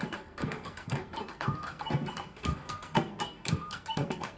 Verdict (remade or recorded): remade